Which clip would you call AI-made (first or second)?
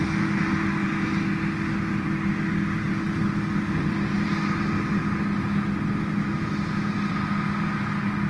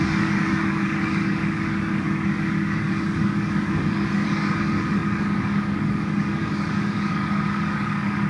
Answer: second